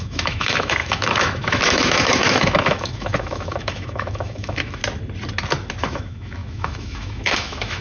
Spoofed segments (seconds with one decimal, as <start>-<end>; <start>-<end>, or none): 0.0-4.8; 5.8-7.8